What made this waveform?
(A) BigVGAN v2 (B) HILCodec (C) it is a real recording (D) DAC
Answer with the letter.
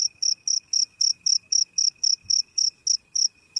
D